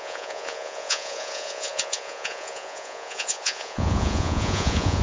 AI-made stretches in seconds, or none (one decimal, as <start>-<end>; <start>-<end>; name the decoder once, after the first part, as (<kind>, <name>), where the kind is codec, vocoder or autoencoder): 0.0-5.0 (vocoder, Vocos)